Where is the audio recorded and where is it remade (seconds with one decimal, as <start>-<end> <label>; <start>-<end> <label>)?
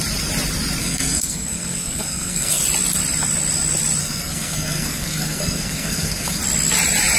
0.0-0.8 recorded; 0.8-2.6 remade; 2.6-4.0 recorded; 4.0-6.4 remade; 6.4-7.2 recorded